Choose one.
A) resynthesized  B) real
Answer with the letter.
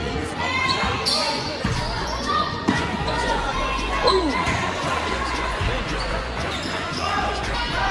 A